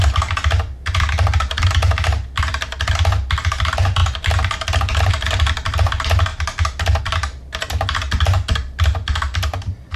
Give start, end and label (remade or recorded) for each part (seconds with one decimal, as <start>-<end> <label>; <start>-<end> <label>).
0.0-10.0 recorded